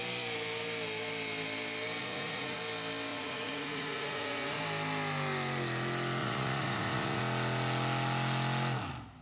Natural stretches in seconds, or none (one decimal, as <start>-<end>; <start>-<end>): 0.0-2.0; 2.6-3.1; 4.6-6.2; 7.2-9.2